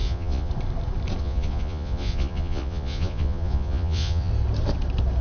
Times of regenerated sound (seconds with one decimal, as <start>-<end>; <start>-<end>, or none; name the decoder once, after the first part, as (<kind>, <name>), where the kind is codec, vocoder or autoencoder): 0.0-0.5 (vocoder, Vocos); 1.2-4.3